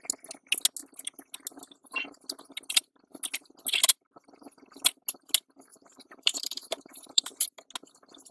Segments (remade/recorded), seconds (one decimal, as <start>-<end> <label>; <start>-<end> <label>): 0.0-5.7 recorded; 5.7-7.2 remade; 7.2-8.3 recorded